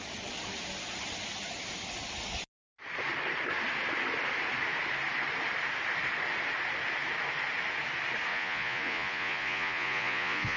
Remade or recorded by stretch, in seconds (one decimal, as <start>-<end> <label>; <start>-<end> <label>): 0.0-8.3 recorded; 8.3-10.6 remade